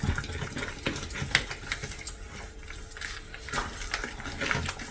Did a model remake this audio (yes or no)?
no